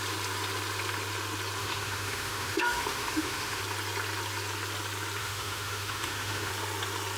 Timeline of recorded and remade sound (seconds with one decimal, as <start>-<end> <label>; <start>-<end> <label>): 0.0-1.6 recorded; 1.6-3.6 remade; 3.6-5.2 recorded; 5.2-6.5 remade; 6.5-7.2 recorded